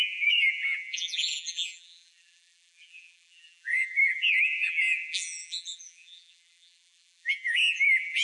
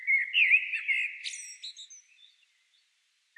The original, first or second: second